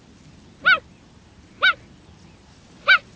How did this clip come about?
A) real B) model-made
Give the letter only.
A